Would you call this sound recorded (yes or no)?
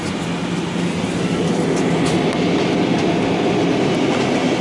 yes